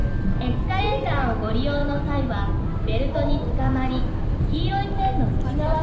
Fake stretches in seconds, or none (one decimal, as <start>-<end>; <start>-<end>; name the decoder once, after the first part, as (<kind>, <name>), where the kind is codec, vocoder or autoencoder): none